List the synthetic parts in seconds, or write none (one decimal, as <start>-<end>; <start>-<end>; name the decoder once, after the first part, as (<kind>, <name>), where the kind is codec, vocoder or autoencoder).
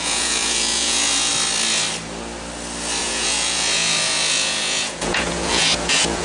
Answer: 0.0-1.3 (vocoder, Vocos); 3.0-6.2